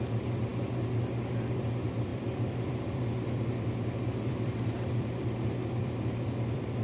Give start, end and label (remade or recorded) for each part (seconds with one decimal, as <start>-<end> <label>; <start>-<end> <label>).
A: 0.0-0.5 remade; 0.5-1.5 recorded; 1.5-6.8 remade